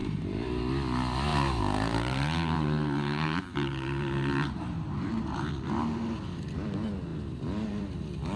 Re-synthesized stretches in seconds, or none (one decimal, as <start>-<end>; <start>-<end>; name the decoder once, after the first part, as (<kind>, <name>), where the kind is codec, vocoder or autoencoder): 0.0-0.6 (vocoder, BigVGAN v2); 1.3-5.5